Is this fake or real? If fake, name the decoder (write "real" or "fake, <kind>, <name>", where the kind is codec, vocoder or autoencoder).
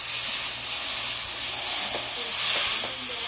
real